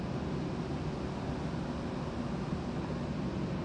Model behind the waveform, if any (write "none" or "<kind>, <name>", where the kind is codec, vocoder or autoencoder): none